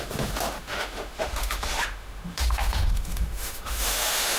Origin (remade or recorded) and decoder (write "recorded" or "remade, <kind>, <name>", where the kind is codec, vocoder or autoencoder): remade, autoencoder, DAC-VAE